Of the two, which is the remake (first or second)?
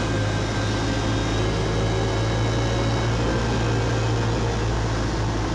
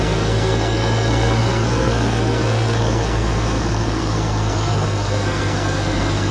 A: second